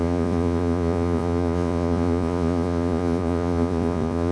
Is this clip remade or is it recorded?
remade